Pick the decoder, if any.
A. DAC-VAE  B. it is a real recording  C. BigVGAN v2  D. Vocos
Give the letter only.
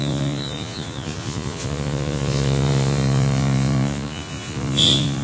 D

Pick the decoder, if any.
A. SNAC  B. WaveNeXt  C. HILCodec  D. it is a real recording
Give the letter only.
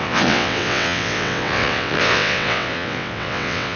B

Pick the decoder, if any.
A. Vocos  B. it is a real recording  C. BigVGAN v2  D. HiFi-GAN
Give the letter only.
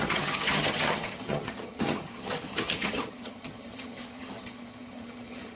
D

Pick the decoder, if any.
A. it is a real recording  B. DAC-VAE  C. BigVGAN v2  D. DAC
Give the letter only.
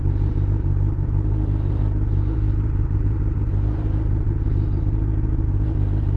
C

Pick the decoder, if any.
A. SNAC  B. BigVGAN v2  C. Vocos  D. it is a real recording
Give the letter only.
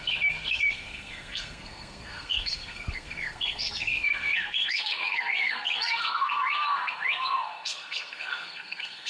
A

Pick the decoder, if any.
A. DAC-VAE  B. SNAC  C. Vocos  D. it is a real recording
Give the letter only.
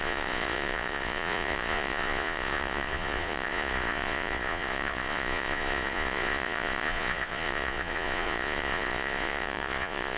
C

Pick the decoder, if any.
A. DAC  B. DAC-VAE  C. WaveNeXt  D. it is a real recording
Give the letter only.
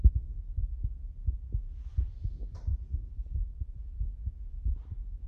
D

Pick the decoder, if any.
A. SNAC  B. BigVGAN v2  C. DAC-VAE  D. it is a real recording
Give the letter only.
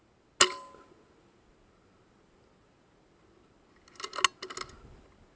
D